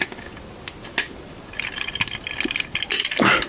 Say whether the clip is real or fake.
real